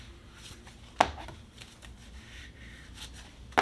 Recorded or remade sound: recorded